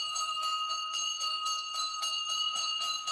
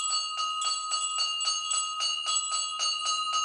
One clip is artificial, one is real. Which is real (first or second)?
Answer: second